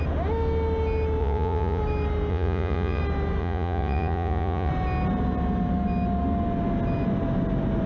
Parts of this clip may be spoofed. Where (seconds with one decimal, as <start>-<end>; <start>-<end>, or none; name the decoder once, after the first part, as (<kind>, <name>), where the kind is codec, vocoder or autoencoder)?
1.2-1.8 (vocoder, Vocos); 2.3-3.0; 3.4-4.7